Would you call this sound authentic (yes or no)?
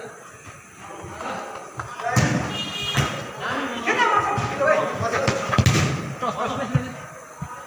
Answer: yes